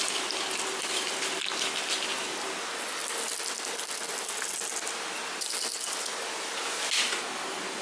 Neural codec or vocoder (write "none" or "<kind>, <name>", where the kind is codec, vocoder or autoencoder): none